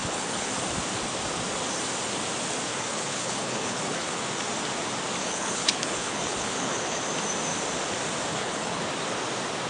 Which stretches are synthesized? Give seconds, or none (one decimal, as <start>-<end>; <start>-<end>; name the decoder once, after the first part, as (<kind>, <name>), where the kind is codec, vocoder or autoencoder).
0.0-0.5 (codec, HILCodec); 2.7-4.2; 5.2-7.0; 8.3-8.8